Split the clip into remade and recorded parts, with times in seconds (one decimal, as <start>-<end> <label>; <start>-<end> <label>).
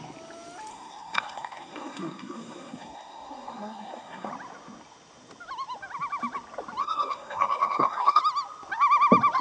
0.0-0.7 recorded; 0.7-4.3 remade; 4.3-6.8 recorded; 6.8-8.2 remade; 8.2-9.4 recorded